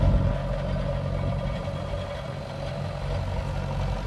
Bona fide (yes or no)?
yes